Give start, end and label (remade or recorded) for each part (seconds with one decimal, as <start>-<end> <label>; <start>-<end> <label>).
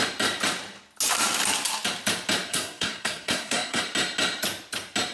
0.0-2.5 recorded; 2.5-3.8 remade; 3.8-5.1 recorded